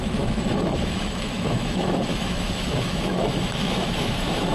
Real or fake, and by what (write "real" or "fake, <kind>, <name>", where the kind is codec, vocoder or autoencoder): fake, autoencoder, DAC-VAE